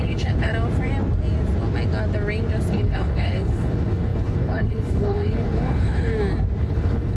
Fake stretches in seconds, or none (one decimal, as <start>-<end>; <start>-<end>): 0.0-0.5; 2.7-6.1; 6.6-7.2